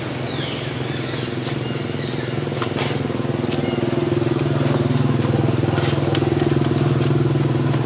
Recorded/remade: recorded